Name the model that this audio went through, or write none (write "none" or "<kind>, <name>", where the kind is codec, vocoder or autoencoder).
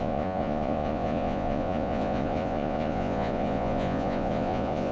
vocoder, Vocos